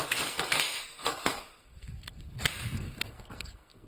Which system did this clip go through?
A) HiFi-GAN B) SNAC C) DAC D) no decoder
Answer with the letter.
B